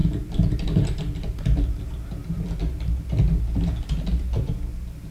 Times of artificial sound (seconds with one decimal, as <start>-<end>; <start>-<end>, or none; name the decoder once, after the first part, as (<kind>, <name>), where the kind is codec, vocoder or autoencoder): none